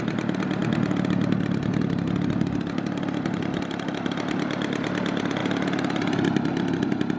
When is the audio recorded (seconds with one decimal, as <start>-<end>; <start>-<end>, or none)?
0.0-7.2